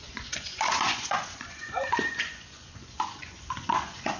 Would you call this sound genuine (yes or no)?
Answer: no